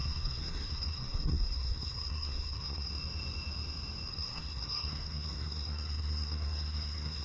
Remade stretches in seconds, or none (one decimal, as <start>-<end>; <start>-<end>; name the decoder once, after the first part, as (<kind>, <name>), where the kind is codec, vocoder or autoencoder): 0.0-2.9 (codec, SNAC); 4.1-7.2